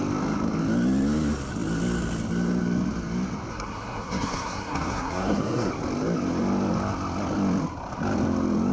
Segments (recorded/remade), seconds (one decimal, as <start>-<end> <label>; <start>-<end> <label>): 0.0-3.5 recorded; 3.5-5.7 remade; 5.7-8.7 recorded